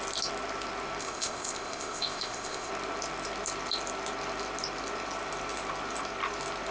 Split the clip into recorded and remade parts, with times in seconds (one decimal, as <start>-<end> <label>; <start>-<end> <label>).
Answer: 0.0-1.0 recorded; 1.0-2.7 remade; 2.7-6.7 recorded